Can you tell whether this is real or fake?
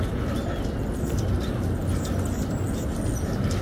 real